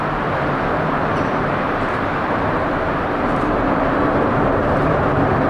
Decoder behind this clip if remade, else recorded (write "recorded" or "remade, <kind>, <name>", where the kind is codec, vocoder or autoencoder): remade, vocoder, BigVGAN v2